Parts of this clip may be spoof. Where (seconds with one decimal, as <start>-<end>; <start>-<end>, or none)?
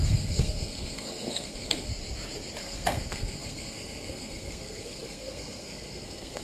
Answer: 0.0-1.9; 2.6-6.4